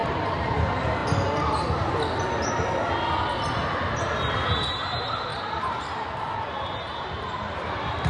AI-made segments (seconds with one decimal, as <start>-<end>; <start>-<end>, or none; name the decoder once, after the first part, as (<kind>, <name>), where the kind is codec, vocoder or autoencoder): 0.0-0.5 (vocoder, BigVGAN v2); 5.3-6.5